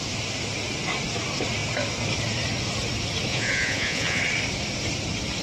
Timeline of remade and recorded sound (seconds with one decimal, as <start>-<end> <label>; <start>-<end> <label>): 0.0-3.3 recorded; 3.3-4.2 remade; 4.2-5.4 recorded